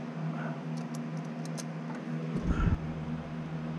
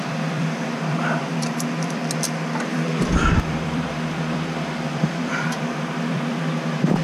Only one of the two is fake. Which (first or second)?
second